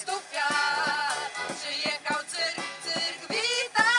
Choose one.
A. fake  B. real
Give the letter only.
B